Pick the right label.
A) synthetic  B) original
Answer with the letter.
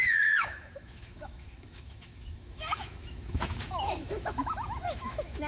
A